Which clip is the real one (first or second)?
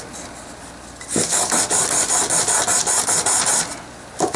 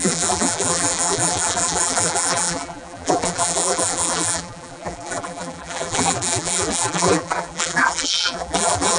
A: first